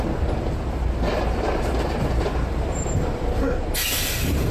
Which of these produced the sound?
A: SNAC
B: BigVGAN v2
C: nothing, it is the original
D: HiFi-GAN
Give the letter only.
B